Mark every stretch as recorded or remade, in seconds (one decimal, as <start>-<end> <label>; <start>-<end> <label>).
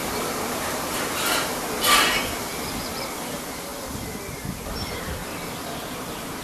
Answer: 0.0-0.8 recorded; 0.8-2.5 remade; 2.5-3.1 recorded; 3.1-3.7 remade; 3.7-4.8 recorded; 4.8-5.2 remade; 5.2-6.4 recorded